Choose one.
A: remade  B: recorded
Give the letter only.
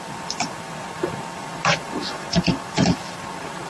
A